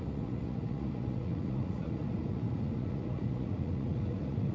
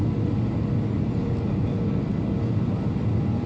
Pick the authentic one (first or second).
second